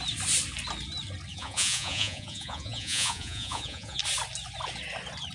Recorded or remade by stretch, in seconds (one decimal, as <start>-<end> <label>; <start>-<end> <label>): 0.0-1.3 recorded; 1.3-4.0 remade; 4.0-5.3 recorded